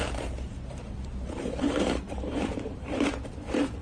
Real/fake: fake